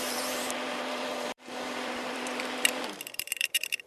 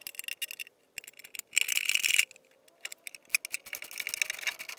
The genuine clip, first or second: second